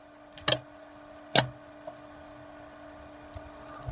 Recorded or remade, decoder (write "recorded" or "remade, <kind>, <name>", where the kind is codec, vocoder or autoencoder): recorded